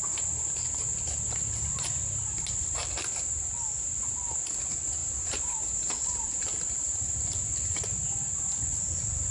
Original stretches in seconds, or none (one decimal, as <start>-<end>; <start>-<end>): 0.0-2.0; 2.9-5.0; 7.2-9.3